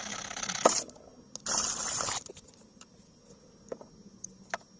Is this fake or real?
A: real